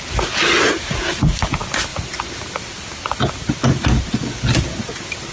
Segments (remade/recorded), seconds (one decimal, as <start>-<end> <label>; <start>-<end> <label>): 0.0-5.3 recorded